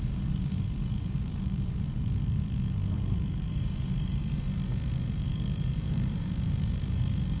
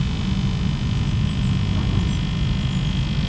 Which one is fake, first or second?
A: first